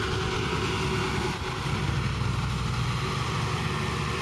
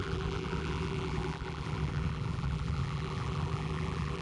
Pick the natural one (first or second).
first